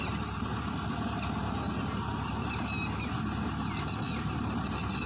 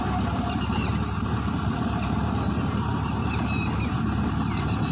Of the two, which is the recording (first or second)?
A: first